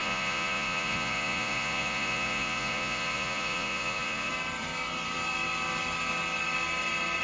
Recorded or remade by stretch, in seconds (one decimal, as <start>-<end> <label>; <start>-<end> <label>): 0.0-4.3 remade; 4.3-7.2 recorded